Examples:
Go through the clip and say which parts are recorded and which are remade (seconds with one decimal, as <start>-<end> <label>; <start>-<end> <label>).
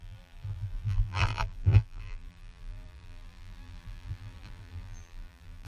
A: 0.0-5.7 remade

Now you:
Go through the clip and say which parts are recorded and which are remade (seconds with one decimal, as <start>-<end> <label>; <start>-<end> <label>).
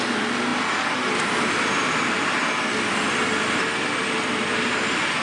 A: 0.0-5.2 recorded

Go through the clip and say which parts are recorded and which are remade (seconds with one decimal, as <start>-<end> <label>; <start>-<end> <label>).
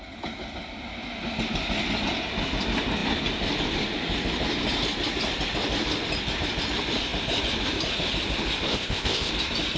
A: 0.0-8.7 recorded; 8.7-9.3 remade; 9.3-9.8 recorded